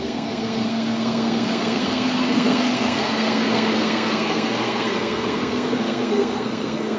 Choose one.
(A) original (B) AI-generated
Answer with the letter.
B